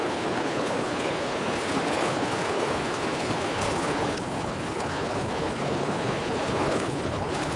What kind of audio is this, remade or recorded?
remade